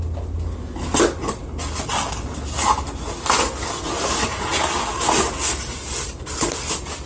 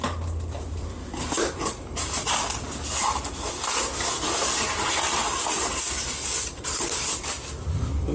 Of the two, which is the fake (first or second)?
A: second